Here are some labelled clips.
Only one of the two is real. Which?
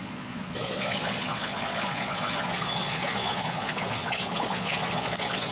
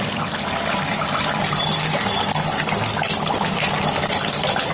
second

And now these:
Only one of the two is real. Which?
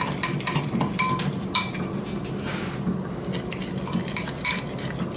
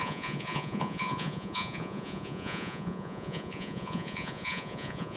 first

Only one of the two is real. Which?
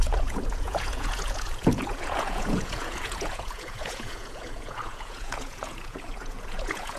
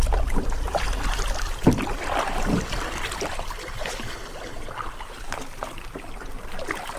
second